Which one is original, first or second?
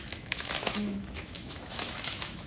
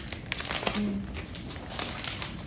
second